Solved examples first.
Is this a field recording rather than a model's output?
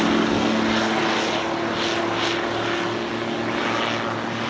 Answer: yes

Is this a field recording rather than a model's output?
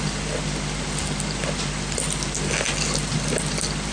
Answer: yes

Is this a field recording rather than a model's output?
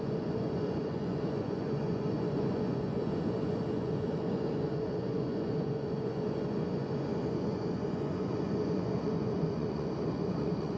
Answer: no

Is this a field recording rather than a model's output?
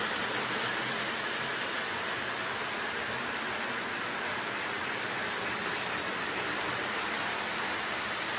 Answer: no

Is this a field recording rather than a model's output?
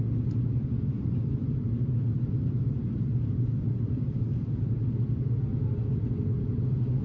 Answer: yes